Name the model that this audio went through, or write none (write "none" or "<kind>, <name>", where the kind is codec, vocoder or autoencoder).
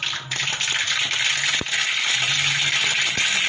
none